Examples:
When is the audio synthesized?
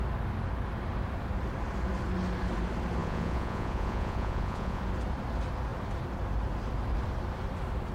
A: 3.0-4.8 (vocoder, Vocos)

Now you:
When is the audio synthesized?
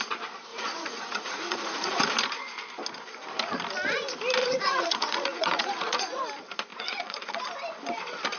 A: 0.5-2.0 (vocoder, Vocos); 4.4-6.2; 6.7-7.4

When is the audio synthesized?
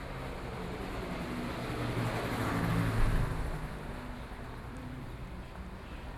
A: none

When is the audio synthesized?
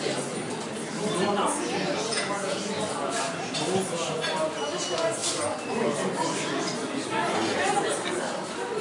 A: 2.1-2.6 (vocoder, Vocos)